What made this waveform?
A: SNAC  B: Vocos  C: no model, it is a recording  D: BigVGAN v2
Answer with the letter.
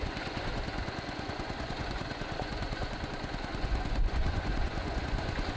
B